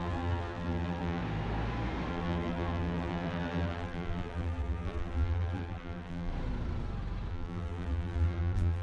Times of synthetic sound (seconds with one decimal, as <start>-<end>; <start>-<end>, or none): 0.0-1.2; 2.1-6.3; 7.3-8.8